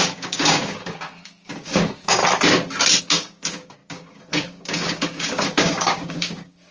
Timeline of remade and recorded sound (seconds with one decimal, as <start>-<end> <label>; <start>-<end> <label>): 0.0-2.2 remade; 2.2-3.0 recorded; 3.0-6.7 remade